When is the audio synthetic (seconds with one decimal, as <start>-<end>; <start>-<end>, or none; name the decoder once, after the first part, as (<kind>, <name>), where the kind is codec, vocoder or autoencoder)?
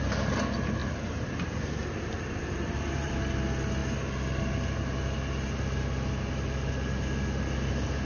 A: 0.8-3.1 (vocoder, BigVGAN v2)